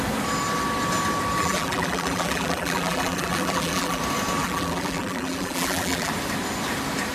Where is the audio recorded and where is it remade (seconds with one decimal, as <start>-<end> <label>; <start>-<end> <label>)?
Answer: 0.0-1.4 recorded; 1.4-4.0 remade; 4.0-4.4 recorded; 4.4-6.1 remade; 6.1-7.1 recorded